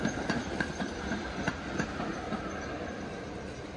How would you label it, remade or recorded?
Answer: recorded